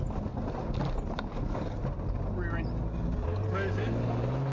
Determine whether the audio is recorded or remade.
recorded